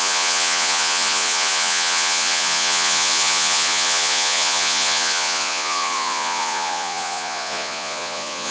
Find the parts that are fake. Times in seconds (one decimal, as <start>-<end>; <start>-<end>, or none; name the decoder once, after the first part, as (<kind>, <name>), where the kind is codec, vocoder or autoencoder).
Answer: 0.0-8.5 (vocoder, Vocos)